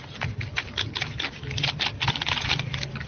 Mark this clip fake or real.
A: real